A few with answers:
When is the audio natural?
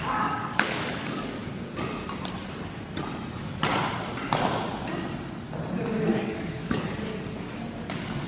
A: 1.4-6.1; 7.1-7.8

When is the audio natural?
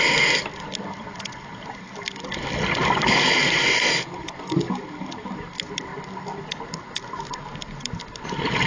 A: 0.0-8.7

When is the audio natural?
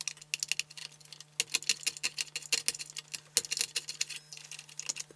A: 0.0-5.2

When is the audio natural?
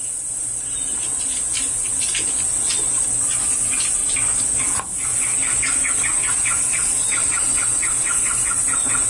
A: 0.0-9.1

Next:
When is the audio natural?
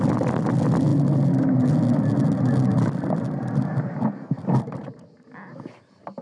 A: 0.0-6.2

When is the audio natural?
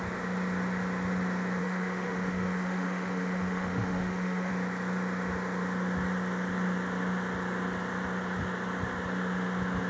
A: 0.0-1.6; 4.5-9.9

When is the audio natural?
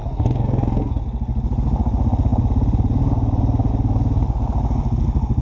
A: 1.0-5.4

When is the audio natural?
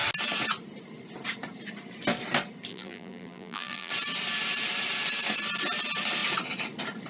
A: 0.0-2.7; 3.9-7.1